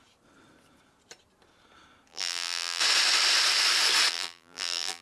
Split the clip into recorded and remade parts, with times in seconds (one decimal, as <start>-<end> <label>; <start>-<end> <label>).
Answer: 0.0-2.1 recorded; 2.1-2.8 remade; 2.8-4.1 recorded; 4.1-5.0 remade